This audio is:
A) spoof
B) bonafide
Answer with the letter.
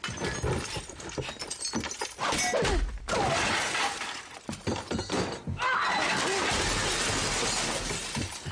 B